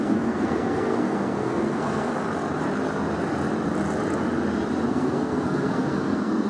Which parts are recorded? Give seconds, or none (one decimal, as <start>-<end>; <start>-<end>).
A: 2.2-4.9